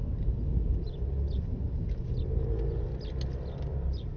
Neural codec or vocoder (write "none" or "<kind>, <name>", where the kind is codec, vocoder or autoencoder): none